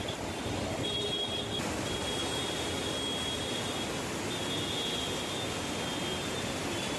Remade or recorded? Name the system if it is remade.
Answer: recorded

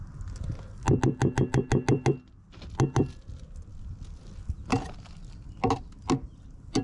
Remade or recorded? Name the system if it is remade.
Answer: recorded